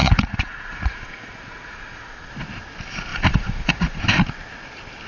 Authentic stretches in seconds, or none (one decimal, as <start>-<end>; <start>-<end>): 2.3-3.1; 4.0-5.1